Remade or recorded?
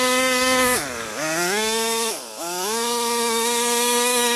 remade